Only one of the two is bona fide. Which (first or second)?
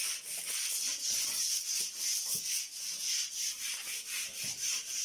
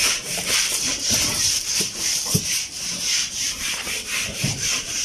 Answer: first